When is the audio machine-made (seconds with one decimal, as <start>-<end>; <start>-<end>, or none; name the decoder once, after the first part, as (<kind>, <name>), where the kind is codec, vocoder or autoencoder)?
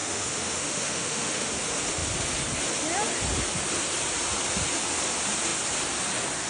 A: 0.0-1.5 (autoencoder, DAC-VAE)